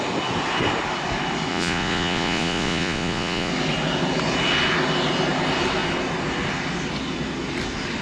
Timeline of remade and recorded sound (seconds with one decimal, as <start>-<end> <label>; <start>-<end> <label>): 0.0-1.5 recorded; 1.5-3.5 remade; 3.5-8.0 recorded

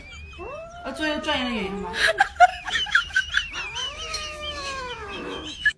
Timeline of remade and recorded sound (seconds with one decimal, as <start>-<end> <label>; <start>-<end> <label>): 0.0-2.5 recorded; 2.5-3.3 remade; 3.3-3.8 recorded; 3.8-5.8 remade

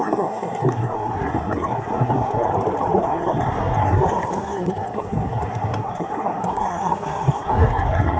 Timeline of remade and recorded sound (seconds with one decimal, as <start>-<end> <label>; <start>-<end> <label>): 0.0-2.5 remade; 2.5-3.0 recorded; 3.0-8.2 remade

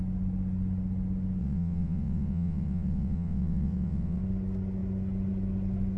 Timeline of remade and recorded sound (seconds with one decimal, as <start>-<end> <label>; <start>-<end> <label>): 0.0-1.4 recorded; 1.4-4.2 remade; 4.2-6.0 recorded

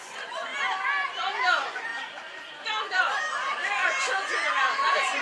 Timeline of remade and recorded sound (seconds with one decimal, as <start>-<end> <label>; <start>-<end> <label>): 0.0-0.5 remade; 0.5-1.3 recorded; 1.3-1.9 remade; 1.9-4.5 recorded; 4.5-5.2 remade

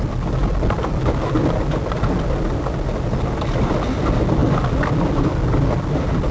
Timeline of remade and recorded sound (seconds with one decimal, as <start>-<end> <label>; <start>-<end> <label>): 0.0-0.4 recorded; 0.4-1.0 remade; 1.0-6.3 recorded

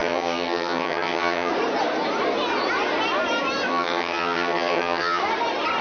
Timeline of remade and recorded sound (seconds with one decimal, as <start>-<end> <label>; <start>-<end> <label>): 0.0-1.5 remade; 1.5-3.7 recorded; 3.7-5.2 remade; 5.2-5.8 recorded